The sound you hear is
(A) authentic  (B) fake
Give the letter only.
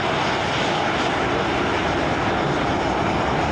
A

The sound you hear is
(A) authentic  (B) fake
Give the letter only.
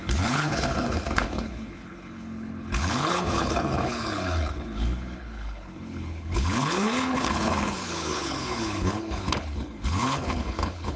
B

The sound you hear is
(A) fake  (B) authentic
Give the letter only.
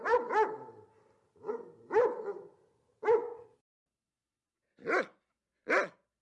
B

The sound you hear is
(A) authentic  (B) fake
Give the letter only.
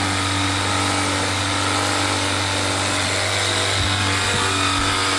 A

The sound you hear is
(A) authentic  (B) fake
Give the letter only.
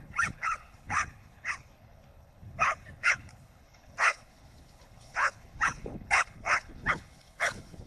B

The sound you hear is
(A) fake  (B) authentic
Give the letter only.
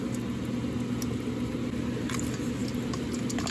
B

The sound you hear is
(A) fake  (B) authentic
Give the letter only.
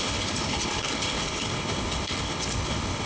A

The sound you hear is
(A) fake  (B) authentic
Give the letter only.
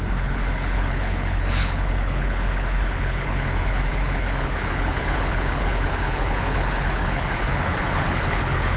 A